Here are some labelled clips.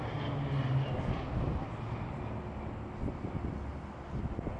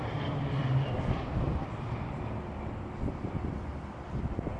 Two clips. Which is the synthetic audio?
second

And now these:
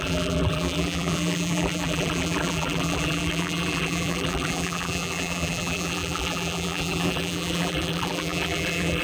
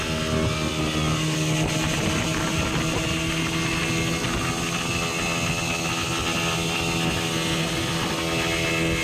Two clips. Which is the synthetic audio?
first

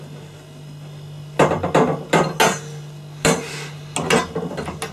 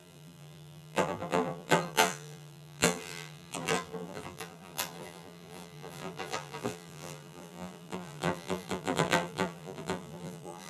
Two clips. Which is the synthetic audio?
second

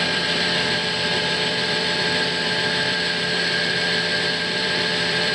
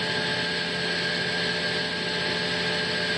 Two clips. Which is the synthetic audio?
first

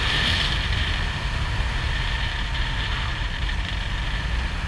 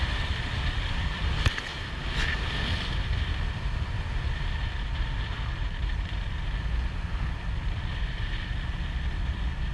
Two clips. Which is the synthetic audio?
second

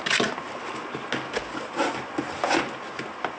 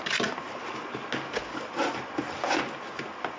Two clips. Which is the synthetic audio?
second